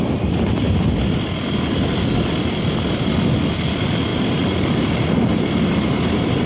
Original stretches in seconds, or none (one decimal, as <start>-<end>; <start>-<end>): 0.0-4.1